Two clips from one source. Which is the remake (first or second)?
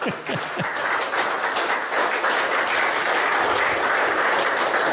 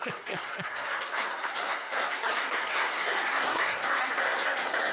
second